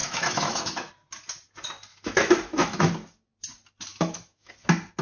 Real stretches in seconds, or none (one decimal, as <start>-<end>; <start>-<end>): 0.9-1.9; 2.9-3.9; 4.5-5.0